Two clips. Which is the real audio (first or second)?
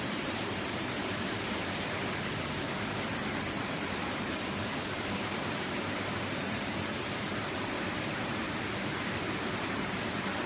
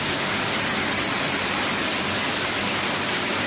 second